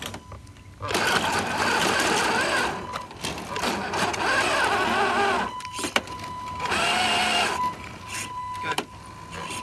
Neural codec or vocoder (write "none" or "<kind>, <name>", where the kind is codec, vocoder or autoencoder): none